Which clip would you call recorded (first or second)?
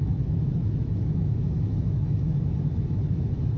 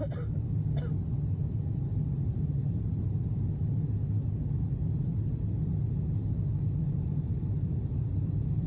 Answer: second